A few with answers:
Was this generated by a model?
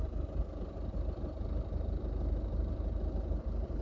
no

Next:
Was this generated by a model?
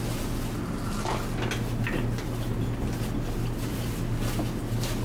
no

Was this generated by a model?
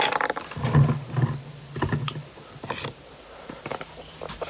no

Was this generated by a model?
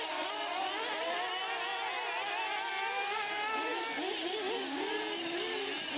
no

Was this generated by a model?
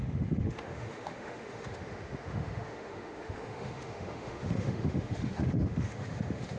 yes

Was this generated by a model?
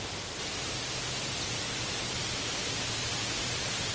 yes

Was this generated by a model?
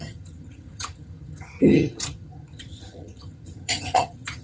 yes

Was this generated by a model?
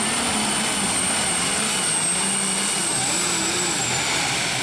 no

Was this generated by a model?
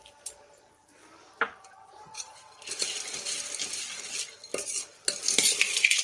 no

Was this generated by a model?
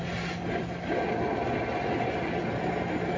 no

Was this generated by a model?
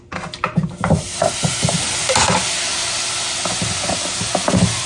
no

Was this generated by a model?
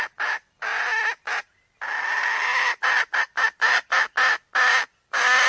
no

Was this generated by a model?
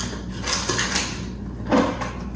no